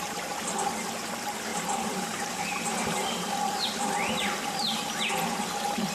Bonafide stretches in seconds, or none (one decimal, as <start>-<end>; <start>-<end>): 0.0-1.5; 5.0-5.9